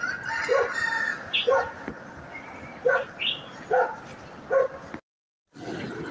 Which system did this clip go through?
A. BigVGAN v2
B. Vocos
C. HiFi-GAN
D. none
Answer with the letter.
D